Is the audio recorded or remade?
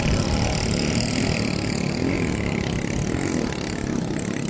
recorded